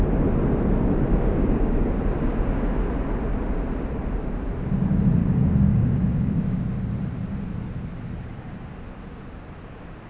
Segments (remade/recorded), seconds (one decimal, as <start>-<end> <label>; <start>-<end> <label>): 0.0-1.1 recorded; 1.1-1.8 remade; 1.8-2.3 recorded; 2.3-2.9 remade; 2.9-5.2 recorded; 5.2-6.9 remade; 6.9-10.1 recorded